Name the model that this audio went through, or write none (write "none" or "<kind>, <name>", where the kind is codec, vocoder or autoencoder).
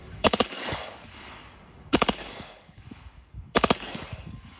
codec, DAC